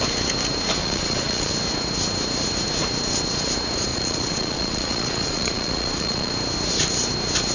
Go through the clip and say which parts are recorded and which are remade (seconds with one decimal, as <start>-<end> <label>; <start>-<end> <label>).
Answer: 0.0-0.8 recorded; 0.8-1.5 remade; 1.5-3.9 recorded; 3.9-6.3 remade; 6.3-7.5 recorded